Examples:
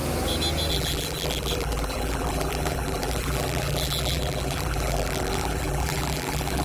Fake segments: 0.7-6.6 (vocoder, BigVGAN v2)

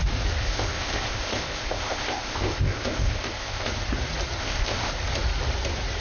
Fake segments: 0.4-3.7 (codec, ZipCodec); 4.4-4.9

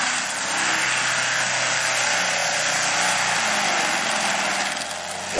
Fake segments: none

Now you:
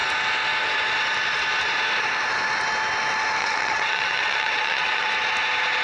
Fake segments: 3.4-5.1 (vocoder, WaveNeXt)

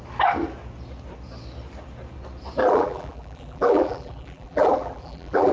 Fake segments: 2.6-5.5 (vocoder, BigVGAN v2)

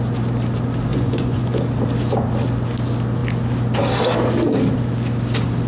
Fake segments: 0.9-1.6 (vocoder, Vocos)

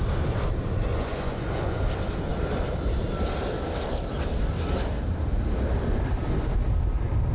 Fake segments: 0.9-1.8 (vocoder, Vocos)